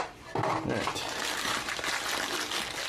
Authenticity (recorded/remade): recorded